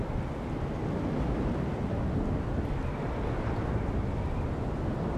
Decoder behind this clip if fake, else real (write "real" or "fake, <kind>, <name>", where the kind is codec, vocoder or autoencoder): real